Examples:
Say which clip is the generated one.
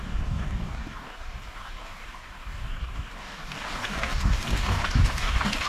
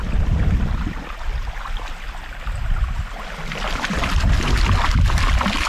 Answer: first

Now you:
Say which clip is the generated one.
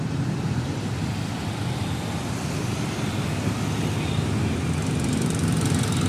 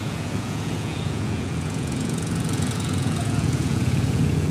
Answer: second